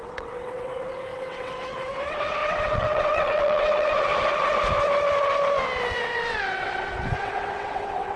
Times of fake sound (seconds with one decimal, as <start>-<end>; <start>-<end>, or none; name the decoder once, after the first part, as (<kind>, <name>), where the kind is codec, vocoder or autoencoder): 0.0-4.1 (vocoder, WaveNeXt); 5.8-8.2